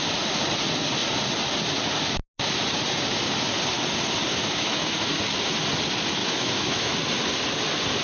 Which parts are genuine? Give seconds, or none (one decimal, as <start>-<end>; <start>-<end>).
0.0-4.3; 5.1-6.2; 6.9-8.0